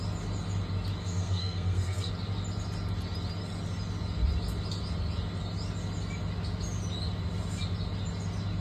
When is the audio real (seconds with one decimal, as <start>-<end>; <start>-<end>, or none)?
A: 0.0-1.0; 2.1-8.6